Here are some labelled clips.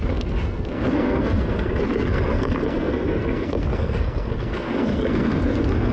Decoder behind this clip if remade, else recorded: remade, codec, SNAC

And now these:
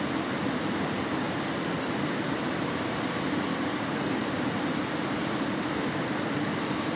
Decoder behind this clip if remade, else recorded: remade, vocoder, BigVGAN v2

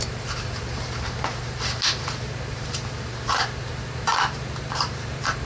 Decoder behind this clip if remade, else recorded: remade, vocoder, BigVGAN v2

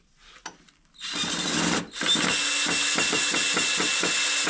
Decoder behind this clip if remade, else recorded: recorded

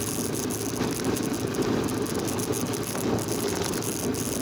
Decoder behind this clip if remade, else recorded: remade, vocoder, BigVGAN v2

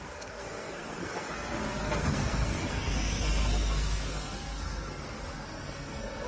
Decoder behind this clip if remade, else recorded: remade, codec, SNAC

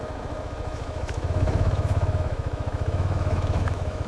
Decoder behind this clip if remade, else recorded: remade, autoencoder, DAC-VAE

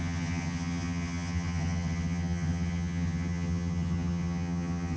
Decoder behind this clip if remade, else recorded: remade, vocoder, HiFi-GAN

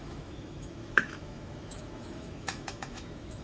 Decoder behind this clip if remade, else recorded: remade, autoencoder, DAC-VAE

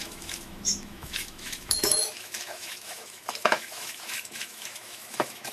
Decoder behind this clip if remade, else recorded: remade, autoencoder, DAC-VAE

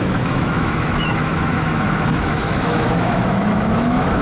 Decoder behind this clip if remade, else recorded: remade, autoencoder, DAC-VAE